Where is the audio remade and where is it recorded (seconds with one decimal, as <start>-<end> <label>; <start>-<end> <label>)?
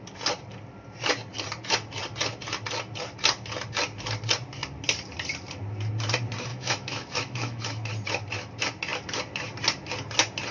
0.0-6.5 recorded; 6.5-7.9 remade; 7.9-10.5 recorded